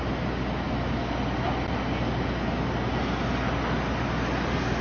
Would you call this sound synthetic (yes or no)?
no